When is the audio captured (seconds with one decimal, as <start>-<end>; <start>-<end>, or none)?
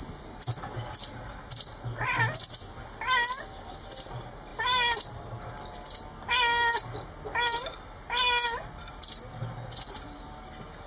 0.0-10.9